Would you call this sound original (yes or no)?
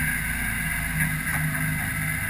yes